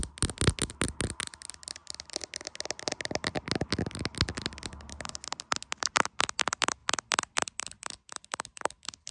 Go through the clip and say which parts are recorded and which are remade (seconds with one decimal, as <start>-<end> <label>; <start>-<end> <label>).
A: 0.0-9.1 recorded